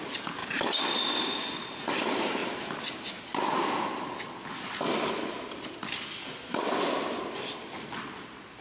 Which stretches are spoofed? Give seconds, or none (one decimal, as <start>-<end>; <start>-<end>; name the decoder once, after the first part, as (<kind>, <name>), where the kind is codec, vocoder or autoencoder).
none